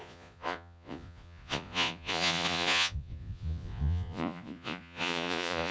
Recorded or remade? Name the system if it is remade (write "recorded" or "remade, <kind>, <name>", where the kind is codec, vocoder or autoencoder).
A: remade, vocoder, Vocos